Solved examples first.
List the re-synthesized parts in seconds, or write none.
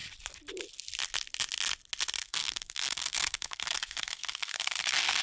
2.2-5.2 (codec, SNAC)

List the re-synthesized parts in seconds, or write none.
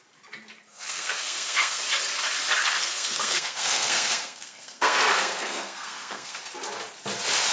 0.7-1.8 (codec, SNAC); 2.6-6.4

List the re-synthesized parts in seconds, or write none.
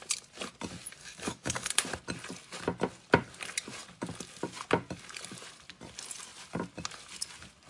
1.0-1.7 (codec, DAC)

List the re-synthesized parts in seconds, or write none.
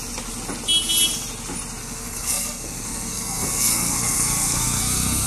1.8-5.3 (codec, SNAC)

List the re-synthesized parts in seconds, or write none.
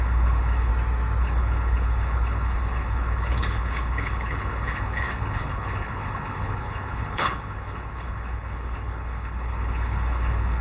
0.0-0.7 (codec, HILCodec); 1.2-10.6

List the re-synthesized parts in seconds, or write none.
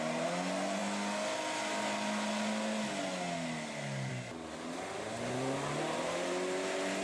none